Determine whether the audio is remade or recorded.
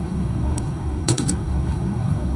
remade